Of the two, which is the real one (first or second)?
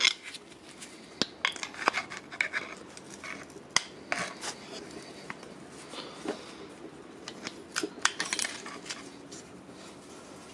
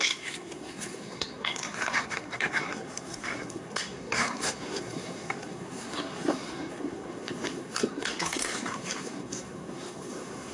first